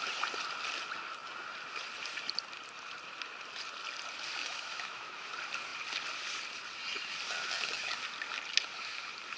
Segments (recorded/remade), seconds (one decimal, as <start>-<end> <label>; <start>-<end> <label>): 0.0-4.4 recorded; 4.4-5.3 remade; 5.3-9.4 recorded